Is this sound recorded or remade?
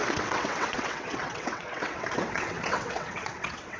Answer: remade